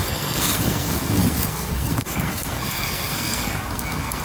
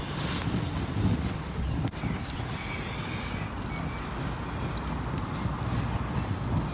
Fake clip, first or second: first